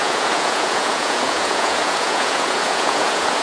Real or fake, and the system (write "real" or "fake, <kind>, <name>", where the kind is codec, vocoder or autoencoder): fake, vocoder, Vocos